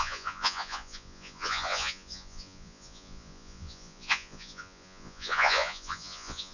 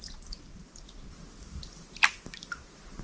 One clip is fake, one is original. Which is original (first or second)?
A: second